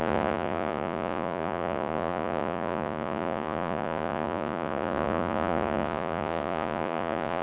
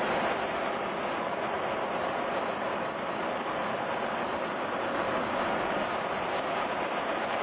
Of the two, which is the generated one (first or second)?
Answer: first